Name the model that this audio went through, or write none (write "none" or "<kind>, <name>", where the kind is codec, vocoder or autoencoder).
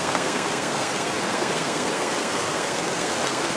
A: codec, SNAC